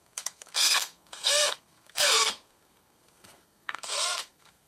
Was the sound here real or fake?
fake